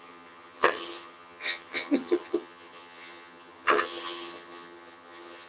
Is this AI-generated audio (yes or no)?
yes